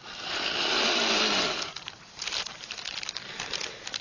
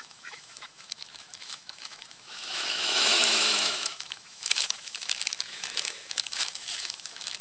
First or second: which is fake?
second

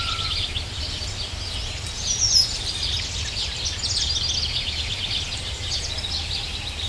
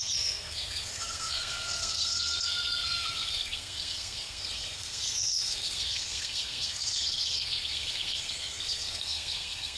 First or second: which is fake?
second